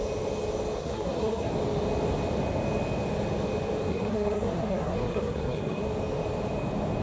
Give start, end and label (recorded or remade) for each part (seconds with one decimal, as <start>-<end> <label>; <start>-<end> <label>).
0.0-0.8 recorded; 0.8-1.5 remade; 1.5-3.9 recorded; 3.9-5.8 remade; 5.8-7.0 recorded